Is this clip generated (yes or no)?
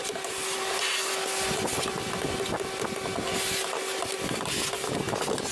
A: no